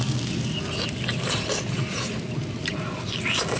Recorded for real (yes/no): yes